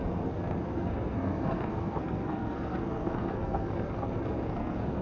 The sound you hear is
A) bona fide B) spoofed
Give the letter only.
B